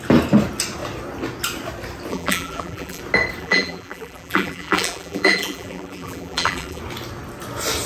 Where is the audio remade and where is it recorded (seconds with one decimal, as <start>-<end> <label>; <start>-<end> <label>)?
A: 0.0-2.1 recorded; 2.1-3.0 remade; 3.0-3.4 recorded; 3.4-6.8 remade; 6.8-7.9 recorded